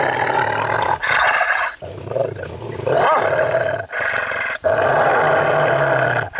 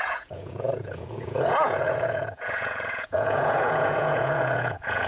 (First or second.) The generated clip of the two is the second